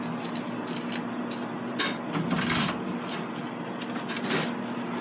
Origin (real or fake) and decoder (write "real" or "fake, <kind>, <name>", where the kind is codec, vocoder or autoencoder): real